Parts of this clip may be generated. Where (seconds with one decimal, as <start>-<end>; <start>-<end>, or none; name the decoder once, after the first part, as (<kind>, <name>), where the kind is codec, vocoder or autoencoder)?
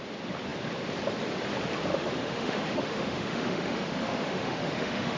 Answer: 1.9-5.2 (autoencoder, DAC-VAE)